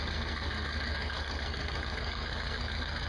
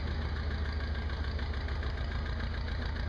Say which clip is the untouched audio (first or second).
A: second